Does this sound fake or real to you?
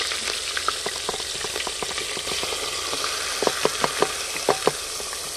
real